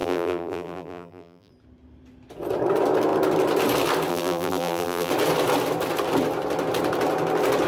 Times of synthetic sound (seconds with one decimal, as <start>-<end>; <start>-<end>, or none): 0.0-1.5; 4.1-5.1